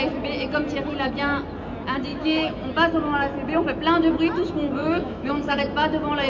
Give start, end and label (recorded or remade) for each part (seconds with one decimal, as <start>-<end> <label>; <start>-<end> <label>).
0.0-2.1 recorded; 2.1-2.7 remade; 2.7-4.8 recorded; 4.8-5.6 remade; 5.6-6.3 recorded